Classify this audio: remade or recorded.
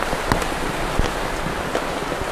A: recorded